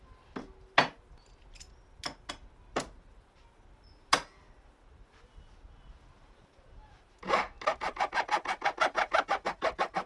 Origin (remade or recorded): recorded